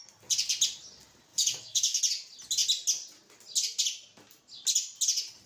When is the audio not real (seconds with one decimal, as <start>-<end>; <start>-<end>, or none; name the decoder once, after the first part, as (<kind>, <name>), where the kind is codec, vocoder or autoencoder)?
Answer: 1.3-2.0 (autoencoder, DAC-VAE)